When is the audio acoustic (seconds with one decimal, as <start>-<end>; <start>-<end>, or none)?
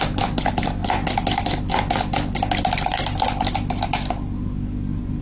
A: 0.0-5.2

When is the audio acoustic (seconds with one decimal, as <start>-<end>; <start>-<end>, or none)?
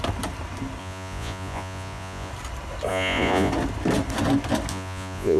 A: 0.0-0.8; 2.3-2.9; 3.5-4.7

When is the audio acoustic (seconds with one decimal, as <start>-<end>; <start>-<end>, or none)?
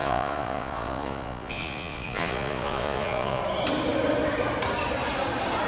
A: 3.4-5.7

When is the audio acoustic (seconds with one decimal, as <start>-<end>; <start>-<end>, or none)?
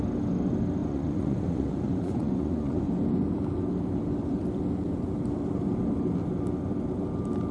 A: 0.0-0.8; 2.9-7.5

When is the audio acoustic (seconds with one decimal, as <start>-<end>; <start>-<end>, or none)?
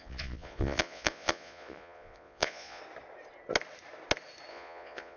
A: 2.8-4.5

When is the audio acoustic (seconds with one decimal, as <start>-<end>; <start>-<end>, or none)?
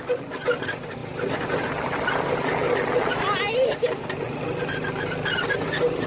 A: 0.0-6.1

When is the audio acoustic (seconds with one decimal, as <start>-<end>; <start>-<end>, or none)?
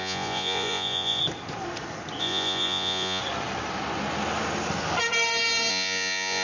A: 1.2-2.2; 3.2-5.7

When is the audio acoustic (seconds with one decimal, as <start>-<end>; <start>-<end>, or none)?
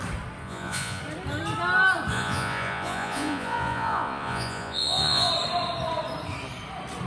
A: 0.0-0.4; 1.0-2.1; 5.3-7.1